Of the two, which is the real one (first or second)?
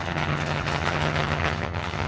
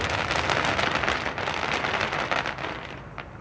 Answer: second